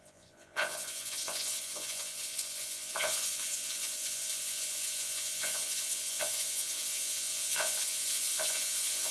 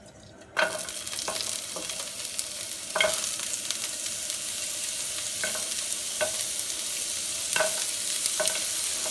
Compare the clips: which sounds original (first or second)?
second